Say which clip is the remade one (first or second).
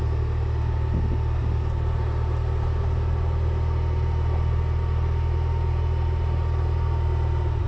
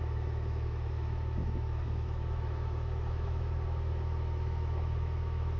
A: second